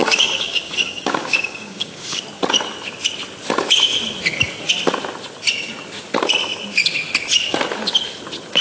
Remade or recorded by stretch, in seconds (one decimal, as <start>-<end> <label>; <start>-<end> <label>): 0.0-2.2 remade; 2.2-8.6 recorded